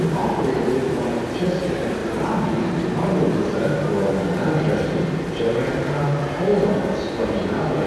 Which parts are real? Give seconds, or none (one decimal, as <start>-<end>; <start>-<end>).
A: 2.0-5.4; 6.5-7.2